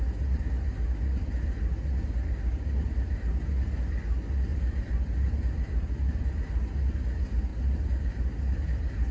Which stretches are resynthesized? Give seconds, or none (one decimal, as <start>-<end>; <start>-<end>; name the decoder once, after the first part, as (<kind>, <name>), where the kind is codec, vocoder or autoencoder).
4.5-6.3 (vocoder, BigVGAN v2); 7.5-8.2